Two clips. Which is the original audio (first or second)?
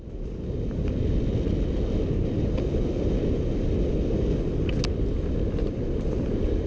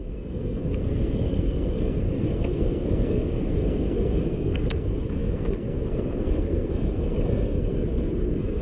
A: first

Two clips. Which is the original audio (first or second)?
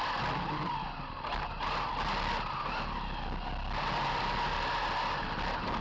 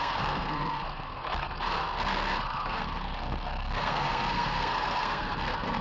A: first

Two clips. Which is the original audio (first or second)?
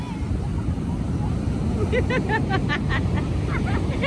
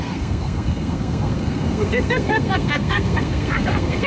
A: first